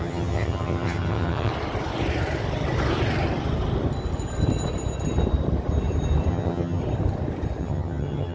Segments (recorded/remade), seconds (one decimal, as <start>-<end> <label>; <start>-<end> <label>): 0.0-1.5 remade; 1.5-6.3 recorded; 6.3-6.8 remade; 6.8-7.6 recorded; 7.6-8.3 remade